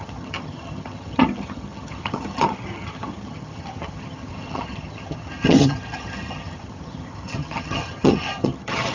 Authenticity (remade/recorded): remade